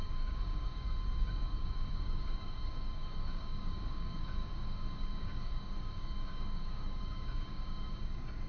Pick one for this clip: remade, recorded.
remade